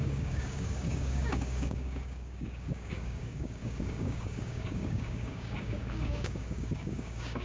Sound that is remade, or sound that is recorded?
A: remade